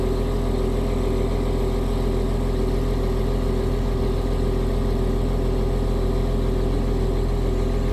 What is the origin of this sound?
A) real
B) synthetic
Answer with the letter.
A